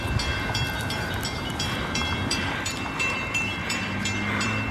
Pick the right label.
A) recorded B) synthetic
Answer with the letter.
B